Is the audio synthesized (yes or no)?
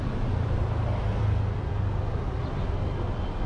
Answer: no